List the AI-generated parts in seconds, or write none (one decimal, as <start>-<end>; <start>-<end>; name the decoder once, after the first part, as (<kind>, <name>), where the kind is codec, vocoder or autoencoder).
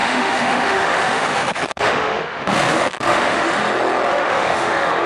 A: 0.0-3.6 (autoencoder, DAC-VAE); 4.1-5.1